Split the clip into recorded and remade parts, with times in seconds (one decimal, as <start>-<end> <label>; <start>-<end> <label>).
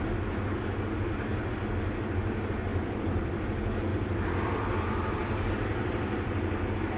0.0-2.7 recorded; 2.7-3.4 remade; 3.4-3.9 recorded; 3.9-4.4 remade; 4.4-5.2 recorded; 5.2-6.5 remade; 6.5-7.0 recorded